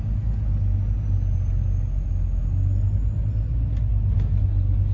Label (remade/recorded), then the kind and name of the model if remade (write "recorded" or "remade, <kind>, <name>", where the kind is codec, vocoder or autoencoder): recorded